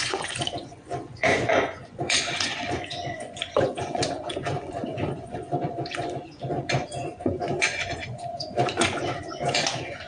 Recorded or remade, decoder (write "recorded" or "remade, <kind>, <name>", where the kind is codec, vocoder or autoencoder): remade, vocoder, Vocos